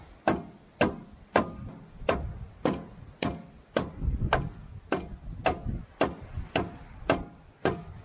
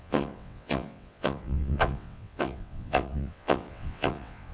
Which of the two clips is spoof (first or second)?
second